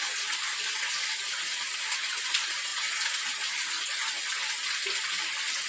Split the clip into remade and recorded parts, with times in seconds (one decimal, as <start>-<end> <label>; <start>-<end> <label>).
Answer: 0.0-5.7 recorded